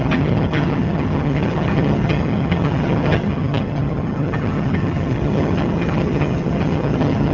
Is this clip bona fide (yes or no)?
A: no